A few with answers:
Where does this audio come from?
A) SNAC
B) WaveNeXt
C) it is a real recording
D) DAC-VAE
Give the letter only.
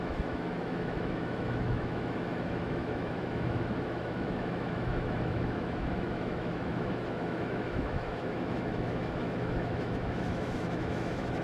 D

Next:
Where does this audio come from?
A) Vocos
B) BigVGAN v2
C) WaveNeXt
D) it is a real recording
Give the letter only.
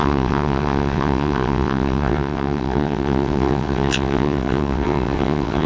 C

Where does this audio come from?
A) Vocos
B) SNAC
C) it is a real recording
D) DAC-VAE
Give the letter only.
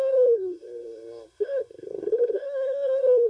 B